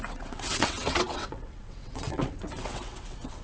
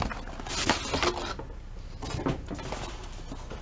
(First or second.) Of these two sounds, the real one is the second